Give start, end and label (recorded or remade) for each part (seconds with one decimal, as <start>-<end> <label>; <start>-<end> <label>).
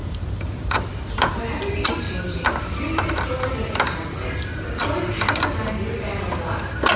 0.0-1.4 remade; 1.4-7.0 recorded